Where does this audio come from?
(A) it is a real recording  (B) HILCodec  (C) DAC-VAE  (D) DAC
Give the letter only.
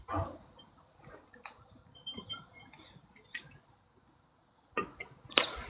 A